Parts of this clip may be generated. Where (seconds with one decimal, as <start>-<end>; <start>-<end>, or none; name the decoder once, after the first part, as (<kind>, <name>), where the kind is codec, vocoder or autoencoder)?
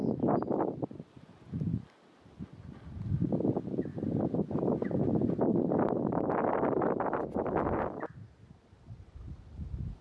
none